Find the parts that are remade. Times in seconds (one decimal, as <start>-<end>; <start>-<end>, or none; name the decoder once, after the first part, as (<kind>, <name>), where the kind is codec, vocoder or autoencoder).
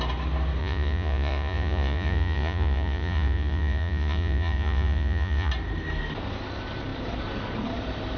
0.6-5.5 (vocoder, Vocos)